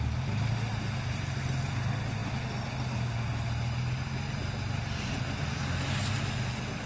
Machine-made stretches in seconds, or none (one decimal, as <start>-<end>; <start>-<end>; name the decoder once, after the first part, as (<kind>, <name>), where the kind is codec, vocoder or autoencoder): none